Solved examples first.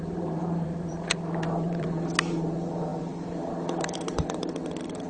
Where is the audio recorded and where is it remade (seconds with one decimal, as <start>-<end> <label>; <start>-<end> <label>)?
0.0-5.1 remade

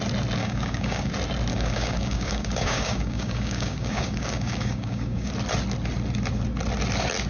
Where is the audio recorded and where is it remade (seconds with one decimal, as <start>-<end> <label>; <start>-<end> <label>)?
0.0-0.4 recorded; 0.4-1.1 remade; 1.1-1.5 recorded; 1.5-5.3 remade; 5.3-7.3 recorded

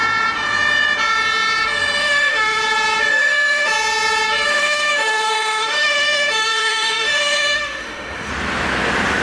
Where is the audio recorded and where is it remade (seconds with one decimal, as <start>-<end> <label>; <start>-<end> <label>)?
0.0-2.0 recorded; 2.0-2.6 remade; 2.6-3.1 recorded; 3.1-3.7 remade; 3.7-4.5 recorded; 4.5-8.3 remade; 8.3-9.2 recorded

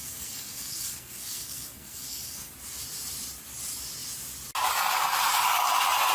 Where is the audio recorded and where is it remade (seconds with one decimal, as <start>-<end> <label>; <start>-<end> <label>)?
0.0-2.5 remade; 2.5-6.1 recorded

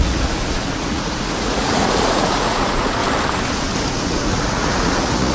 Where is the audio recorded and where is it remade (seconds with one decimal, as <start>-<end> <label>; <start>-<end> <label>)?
0.0-3.0 remade; 3.0-3.9 recorded; 3.9-5.3 remade

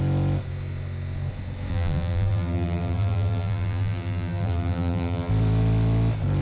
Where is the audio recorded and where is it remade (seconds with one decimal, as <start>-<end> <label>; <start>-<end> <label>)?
0.0-1.7 recorded; 1.7-5.3 remade; 5.3-6.4 recorded